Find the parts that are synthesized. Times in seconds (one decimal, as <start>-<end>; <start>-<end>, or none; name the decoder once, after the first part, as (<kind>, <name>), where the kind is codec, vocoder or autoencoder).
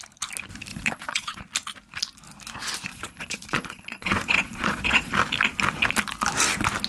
0.7-1.4 (vocoder, Vocos); 2.9-5.1